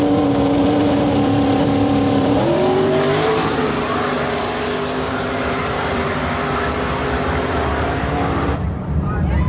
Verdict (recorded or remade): remade